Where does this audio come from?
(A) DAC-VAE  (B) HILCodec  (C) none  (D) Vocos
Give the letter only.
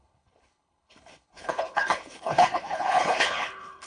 B